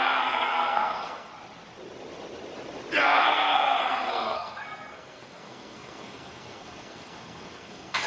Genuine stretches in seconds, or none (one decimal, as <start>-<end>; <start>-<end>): 1.3-3.0